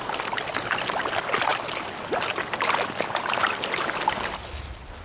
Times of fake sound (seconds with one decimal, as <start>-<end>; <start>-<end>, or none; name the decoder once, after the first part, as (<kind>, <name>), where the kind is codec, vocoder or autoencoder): none